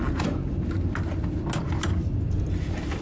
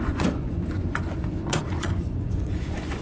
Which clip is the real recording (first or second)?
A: first